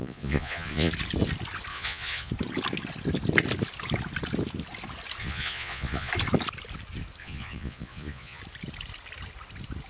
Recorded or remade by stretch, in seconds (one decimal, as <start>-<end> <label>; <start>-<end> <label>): 0.0-0.9 remade; 0.9-1.7 recorded; 1.7-2.3 remade; 2.3-5.2 recorded; 5.2-6.1 remade; 6.1-7.2 recorded; 7.2-8.4 remade; 8.4-9.9 recorded